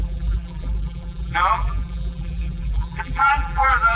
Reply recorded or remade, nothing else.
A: remade